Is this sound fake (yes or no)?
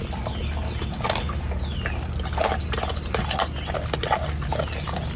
no